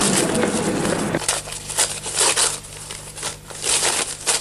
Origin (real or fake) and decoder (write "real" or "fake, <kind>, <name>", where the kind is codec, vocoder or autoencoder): real